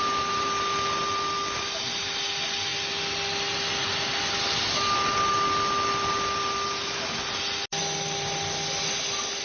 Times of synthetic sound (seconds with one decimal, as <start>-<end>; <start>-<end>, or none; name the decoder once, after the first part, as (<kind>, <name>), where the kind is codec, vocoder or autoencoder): none